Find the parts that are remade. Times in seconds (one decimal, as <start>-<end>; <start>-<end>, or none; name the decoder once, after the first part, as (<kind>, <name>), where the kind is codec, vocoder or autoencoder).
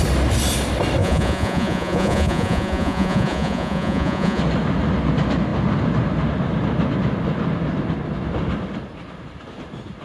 1.0-4.4 (vocoder, Vocos)